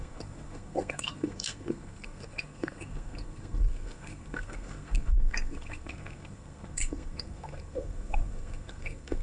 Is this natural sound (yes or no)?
no